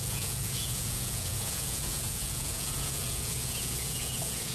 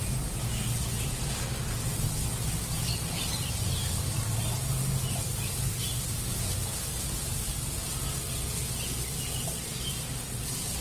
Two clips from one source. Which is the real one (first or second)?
second